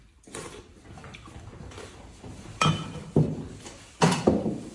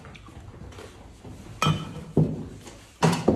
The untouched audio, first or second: second